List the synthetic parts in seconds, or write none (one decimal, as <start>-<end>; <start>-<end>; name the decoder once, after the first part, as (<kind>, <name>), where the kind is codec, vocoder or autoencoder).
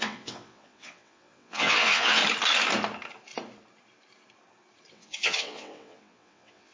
0.0-2.2 (vocoder, WaveNeXt); 4.9-6.7